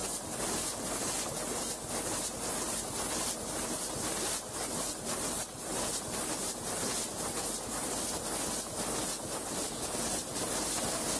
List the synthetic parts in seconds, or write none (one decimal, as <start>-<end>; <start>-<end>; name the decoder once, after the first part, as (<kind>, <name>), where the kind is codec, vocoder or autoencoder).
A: none